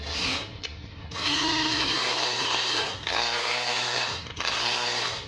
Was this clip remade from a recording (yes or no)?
yes